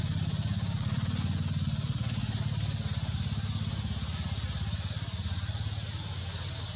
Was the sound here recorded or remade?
recorded